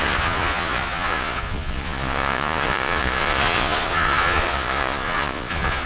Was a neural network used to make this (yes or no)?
yes